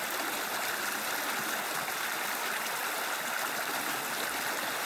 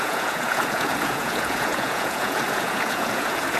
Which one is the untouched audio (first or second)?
first